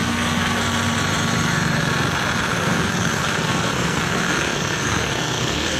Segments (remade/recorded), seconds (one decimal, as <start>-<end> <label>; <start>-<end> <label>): 0.0-0.6 remade; 0.6-2.5 recorded; 2.5-5.8 remade